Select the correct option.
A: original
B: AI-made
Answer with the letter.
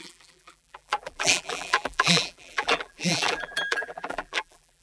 B